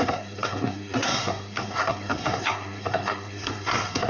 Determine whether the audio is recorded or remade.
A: remade